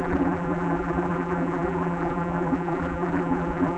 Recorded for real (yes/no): no